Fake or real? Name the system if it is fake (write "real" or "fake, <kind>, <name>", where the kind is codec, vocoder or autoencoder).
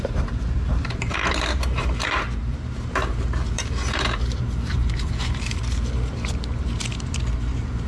fake, vocoder, BigVGAN v2